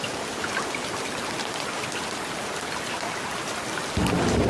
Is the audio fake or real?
real